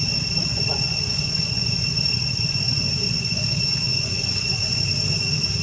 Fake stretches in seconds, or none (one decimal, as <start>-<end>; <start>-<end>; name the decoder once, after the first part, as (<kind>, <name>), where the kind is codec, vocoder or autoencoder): 0.4-3.4 (vocoder, Vocos); 3.9-4.8